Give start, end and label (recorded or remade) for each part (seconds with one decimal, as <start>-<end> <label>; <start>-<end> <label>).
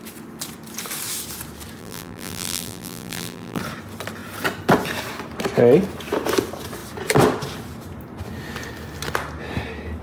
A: 0.0-1.8 recorded; 1.8-3.6 remade; 3.6-10.0 recorded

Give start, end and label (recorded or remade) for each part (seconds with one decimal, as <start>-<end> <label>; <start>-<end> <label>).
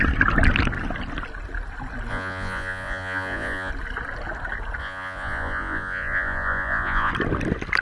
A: 0.0-2.1 recorded; 2.1-3.7 remade; 3.7-4.8 recorded; 4.8-7.1 remade; 7.1-7.8 recorded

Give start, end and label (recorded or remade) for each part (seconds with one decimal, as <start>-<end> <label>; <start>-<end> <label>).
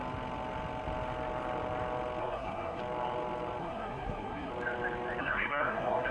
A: 0.0-2.2 recorded; 2.2-2.8 remade; 2.8-3.6 recorded; 3.6-4.5 remade; 4.5-5.2 recorded; 5.2-6.1 remade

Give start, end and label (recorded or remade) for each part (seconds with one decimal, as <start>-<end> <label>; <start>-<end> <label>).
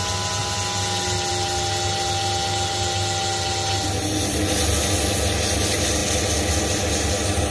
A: 0.0-7.5 recorded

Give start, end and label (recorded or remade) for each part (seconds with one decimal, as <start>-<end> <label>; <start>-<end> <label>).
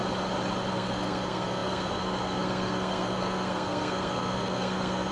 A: 0.0-0.7 recorded; 0.7-5.1 remade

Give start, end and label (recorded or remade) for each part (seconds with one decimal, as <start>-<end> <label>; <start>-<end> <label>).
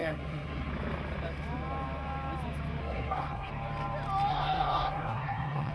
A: 0.0-0.7 remade; 0.7-2.8 recorded; 2.8-3.5 remade; 3.5-4.3 recorded; 4.3-5.7 remade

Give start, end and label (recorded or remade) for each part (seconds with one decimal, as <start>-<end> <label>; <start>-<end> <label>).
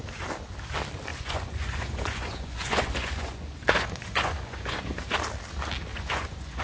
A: 0.0-1.1 recorded; 1.1-5.1 remade; 5.1-5.9 recorded; 5.9-6.6 remade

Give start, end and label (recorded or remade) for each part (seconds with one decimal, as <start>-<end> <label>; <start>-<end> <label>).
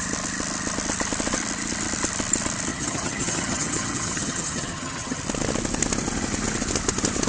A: 0.0-2.7 recorded; 2.7-5.2 remade; 5.2-7.3 recorded